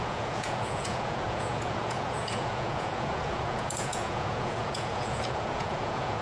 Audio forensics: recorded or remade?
remade